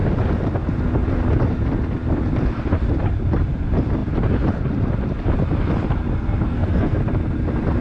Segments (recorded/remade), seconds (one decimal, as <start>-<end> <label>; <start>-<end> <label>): 0.0-6.1 recorded; 6.1-7.0 remade; 7.0-7.8 recorded